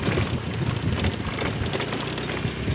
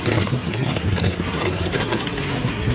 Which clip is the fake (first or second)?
second